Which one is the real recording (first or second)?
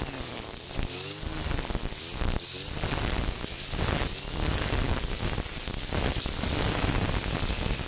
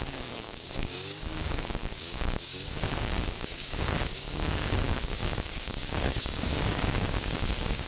first